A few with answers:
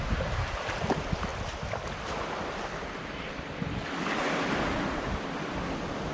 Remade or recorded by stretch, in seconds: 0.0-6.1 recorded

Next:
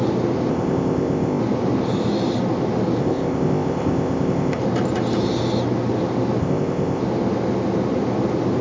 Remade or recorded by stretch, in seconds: 0.0-0.5 recorded; 0.5-1.4 remade; 1.4-3.0 recorded; 3.0-4.6 remade; 4.6-6.4 recorded; 6.4-7.0 remade; 7.0-8.6 recorded

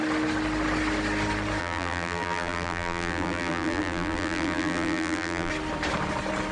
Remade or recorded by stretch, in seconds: 0.0-1.6 recorded; 1.6-5.5 remade; 5.5-6.5 recorded